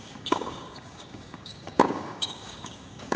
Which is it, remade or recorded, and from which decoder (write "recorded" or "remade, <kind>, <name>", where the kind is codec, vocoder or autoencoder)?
remade, codec, DAC